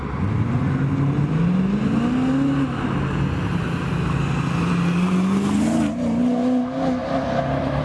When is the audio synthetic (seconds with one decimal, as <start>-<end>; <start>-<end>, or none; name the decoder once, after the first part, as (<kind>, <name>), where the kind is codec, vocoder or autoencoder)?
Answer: 7.0-7.8 (vocoder, BigVGAN v2)